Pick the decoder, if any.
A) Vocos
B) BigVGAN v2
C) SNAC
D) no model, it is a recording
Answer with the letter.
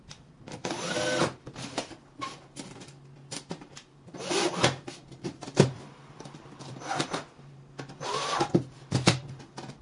B